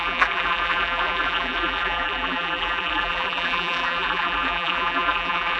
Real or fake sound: fake